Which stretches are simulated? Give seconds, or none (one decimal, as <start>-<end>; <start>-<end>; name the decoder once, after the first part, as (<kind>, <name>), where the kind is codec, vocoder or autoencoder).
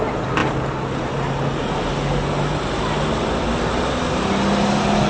none